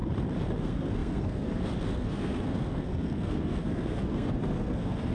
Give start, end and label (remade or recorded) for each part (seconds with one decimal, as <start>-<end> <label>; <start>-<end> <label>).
0.0-0.6 recorded; 0.6-5.1 remade